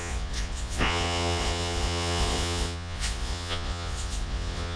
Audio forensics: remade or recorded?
remade